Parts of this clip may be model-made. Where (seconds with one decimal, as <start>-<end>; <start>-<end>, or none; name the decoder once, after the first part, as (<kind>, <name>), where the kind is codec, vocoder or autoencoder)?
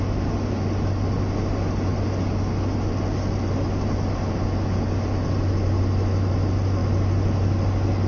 none